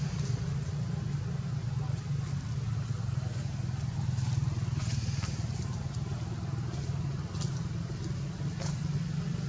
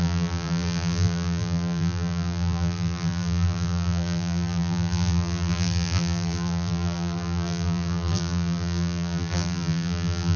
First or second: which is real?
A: first